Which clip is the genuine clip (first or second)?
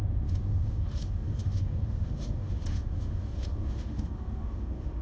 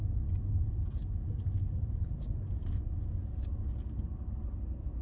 second